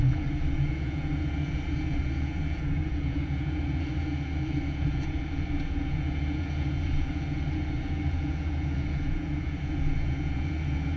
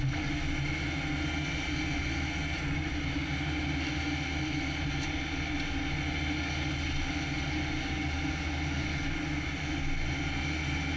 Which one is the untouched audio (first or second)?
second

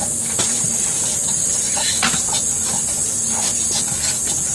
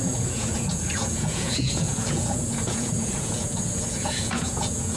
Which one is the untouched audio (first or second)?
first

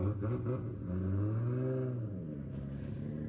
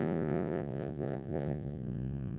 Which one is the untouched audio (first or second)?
first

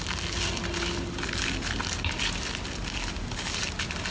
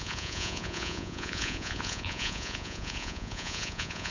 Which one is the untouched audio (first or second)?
first